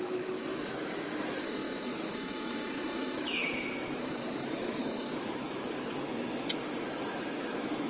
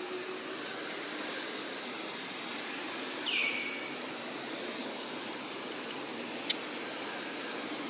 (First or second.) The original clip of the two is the second